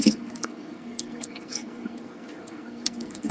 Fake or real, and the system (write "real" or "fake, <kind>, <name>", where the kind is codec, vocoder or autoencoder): fake, codec, SNAC